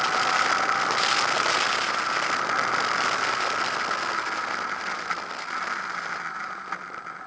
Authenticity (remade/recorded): recorded